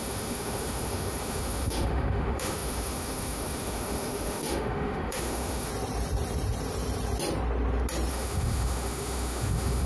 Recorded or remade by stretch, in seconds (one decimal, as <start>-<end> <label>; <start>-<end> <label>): 0.0-5.7 remade; 5.7-8.1 recorded; 8.1-9.9 remade